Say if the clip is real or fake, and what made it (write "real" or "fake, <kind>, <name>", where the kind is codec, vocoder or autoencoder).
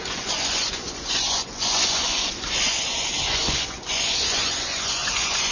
fake, vocoder, Vocos